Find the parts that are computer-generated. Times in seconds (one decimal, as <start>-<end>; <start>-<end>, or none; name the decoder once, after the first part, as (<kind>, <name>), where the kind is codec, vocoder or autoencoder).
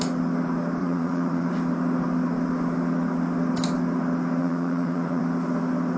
0.8-1.5 (vocoder, Vocos); 4.4-5.2